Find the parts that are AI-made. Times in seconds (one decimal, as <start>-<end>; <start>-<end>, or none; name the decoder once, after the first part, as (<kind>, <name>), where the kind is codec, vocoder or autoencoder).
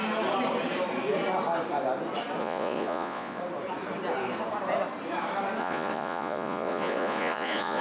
2.4-3.4 (vocoder, Vocos); 5.6-7.8